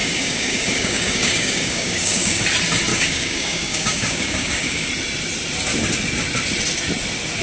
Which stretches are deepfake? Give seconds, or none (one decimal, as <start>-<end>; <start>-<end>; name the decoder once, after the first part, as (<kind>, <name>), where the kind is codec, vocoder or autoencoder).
0.0-2.4 (codec, DAC); 2.9-4.9